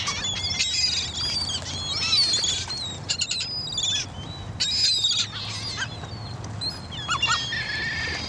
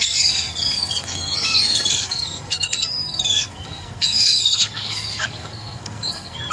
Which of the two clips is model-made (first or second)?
second